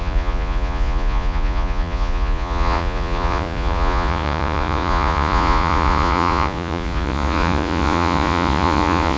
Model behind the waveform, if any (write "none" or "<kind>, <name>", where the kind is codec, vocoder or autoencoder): vocoder, Vocos